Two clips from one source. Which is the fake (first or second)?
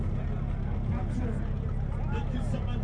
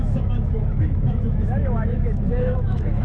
second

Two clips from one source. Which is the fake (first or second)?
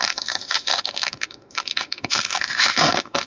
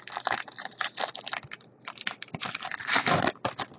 first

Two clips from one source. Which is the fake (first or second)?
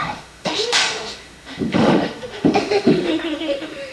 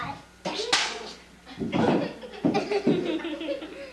first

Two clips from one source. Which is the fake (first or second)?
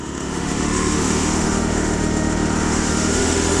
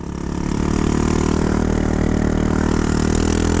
first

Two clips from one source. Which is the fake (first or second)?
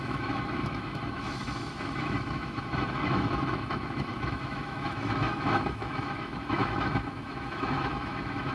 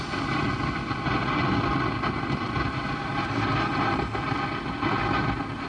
first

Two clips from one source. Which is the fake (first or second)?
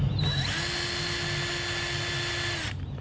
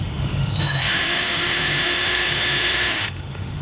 second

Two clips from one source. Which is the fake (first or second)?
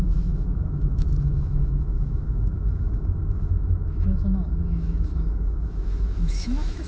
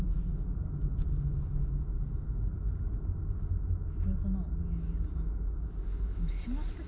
first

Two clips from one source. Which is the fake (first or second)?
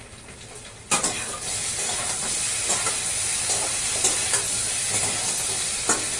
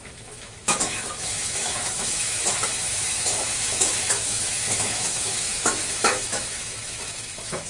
second